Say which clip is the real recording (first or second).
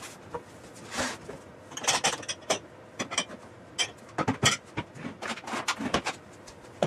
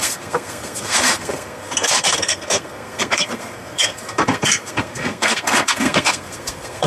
first